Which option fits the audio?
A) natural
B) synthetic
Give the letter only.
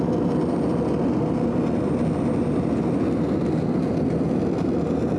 A